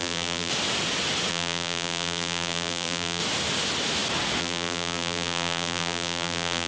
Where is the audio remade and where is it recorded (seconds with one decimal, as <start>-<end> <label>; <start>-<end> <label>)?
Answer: 0.0-0.5 remade; 0.5-1.3 recorded; 1.3-3.2 remade; 3.2-4.4 recorded; 4.4-6.7 remade